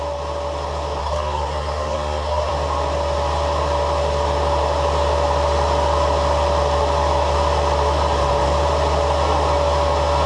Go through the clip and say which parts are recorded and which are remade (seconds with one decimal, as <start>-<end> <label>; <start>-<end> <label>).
0.0-1.0 recorded; 1.0-2.5 remade; 2.5-10.3 recorded